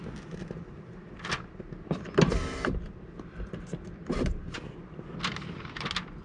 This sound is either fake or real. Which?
real